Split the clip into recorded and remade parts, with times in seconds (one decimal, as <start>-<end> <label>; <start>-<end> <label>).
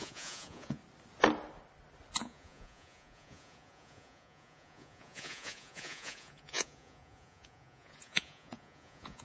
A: 0.0-0.8 remade; 0.8-2.2 recorded; 2.2-9.2 remade